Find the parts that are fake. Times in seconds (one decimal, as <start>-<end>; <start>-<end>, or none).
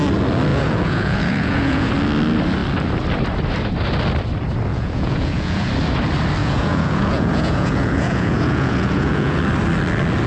0.5-1.9; 4.7-5.7; 6.4-9.4